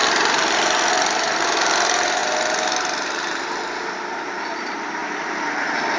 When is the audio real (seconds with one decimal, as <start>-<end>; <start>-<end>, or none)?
2.2-4.4; 5.0-6.0